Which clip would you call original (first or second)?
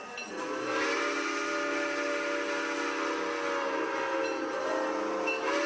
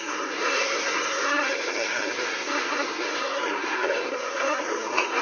first